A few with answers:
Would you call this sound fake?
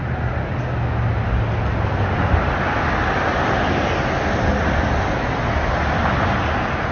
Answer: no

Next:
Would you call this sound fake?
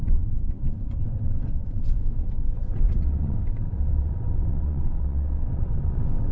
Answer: yes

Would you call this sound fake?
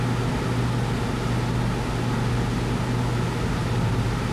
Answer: no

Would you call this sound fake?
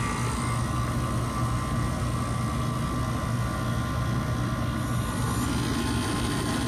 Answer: no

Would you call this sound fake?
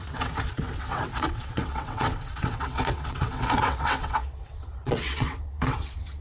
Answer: yes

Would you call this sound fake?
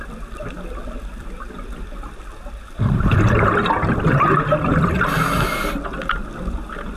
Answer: no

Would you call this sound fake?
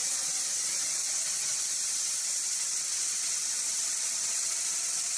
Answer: no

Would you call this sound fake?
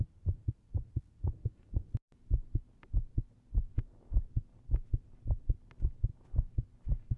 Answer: no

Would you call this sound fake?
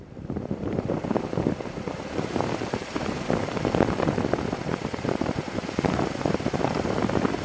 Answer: yes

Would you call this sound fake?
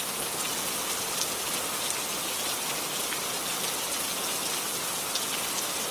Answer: no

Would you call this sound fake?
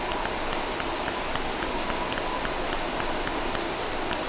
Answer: no